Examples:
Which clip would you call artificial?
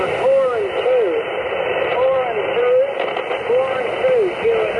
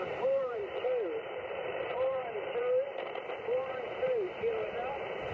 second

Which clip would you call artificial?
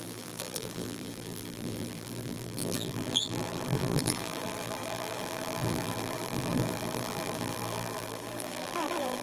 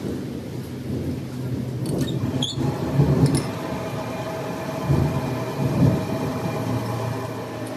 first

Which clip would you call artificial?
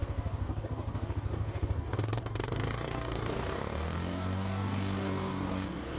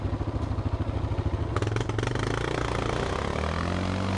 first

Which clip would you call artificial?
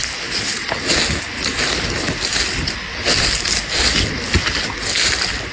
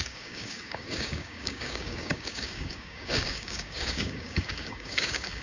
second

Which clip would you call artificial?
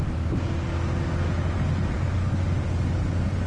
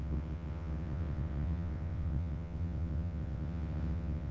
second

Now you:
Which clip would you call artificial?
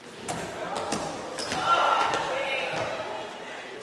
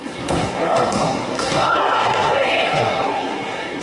second